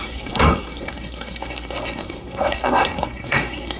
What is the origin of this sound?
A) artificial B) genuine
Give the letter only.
A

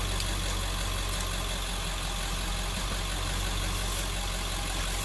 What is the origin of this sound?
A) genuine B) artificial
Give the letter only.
A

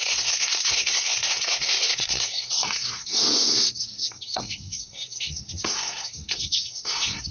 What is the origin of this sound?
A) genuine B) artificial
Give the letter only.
B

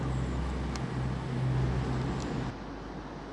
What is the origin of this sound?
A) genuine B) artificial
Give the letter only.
A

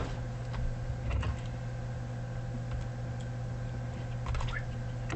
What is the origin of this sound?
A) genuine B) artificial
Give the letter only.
A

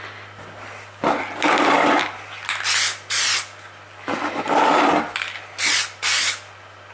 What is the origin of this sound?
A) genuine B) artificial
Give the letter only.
A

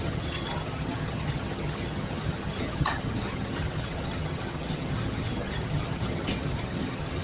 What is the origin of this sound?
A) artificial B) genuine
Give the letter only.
A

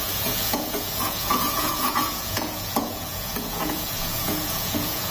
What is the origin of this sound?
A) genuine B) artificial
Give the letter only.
B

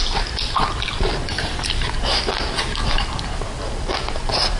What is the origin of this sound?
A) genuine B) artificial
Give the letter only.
A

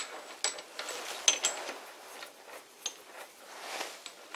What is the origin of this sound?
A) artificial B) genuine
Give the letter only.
B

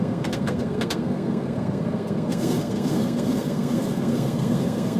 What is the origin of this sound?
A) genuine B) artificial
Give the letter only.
B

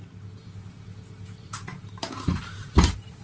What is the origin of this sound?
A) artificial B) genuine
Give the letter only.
A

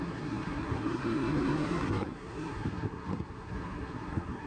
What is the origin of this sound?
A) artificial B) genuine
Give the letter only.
A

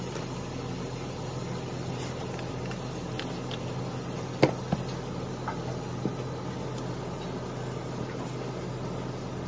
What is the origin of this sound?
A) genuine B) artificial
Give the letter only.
A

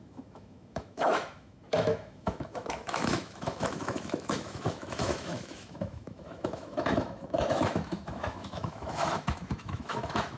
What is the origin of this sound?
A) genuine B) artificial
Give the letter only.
B